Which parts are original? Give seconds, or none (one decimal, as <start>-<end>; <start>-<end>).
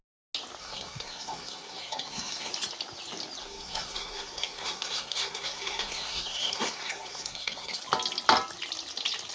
0.0-0.6; 2.5-3.4; 7.8-9.3